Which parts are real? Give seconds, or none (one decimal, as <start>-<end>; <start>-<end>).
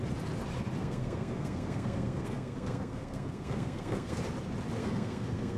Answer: 0.0-0.8; 4.2-4.8